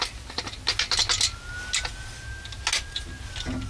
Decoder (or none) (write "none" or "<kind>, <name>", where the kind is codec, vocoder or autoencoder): none